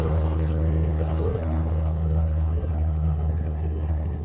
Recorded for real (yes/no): no